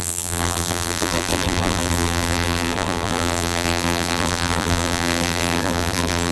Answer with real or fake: fake